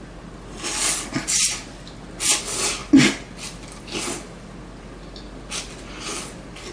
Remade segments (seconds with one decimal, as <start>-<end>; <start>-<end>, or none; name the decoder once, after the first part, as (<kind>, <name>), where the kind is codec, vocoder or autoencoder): none